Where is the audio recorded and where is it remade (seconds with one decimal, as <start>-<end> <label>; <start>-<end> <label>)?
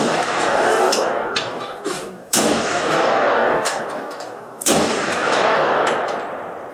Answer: 0.0-5.8 remade; 5.8-6.7 recorded